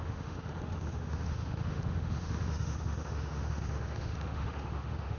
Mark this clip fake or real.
fake